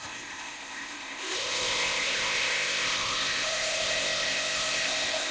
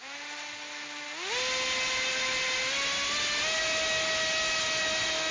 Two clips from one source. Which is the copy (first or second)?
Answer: first